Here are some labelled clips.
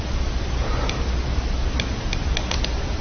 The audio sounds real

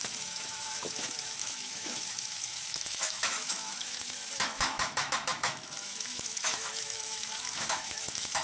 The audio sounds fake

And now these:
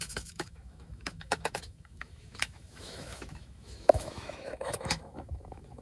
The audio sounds fake